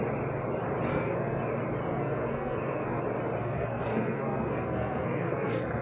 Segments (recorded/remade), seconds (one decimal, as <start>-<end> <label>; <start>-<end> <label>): 0.0-0.9 recorded; 0.9-1.4 remade; 1.4-1.9 recorded; 1.9-3.0 remade; 3.0-3.4 recorded; 3.4-5.8 remade